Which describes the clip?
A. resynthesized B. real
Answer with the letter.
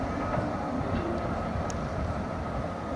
A